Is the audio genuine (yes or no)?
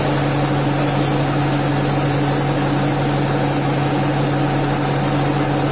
yes